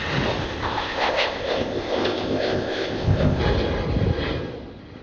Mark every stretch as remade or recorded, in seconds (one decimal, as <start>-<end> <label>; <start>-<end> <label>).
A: 0.0-0.4 recorded; 0.4-3.4 remade; 3.4-5.0 recorded